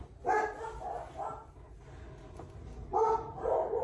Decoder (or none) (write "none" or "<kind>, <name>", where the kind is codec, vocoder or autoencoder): none